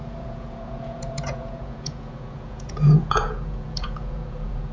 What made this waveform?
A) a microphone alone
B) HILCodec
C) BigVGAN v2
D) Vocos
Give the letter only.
D